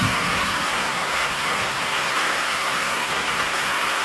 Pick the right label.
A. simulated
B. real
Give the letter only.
A